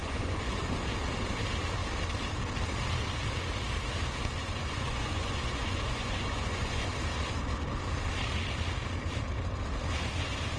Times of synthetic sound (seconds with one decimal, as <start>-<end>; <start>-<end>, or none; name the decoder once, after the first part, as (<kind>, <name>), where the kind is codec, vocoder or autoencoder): 0.0-0.6 (vocoder, Vocos); 4.4-6.9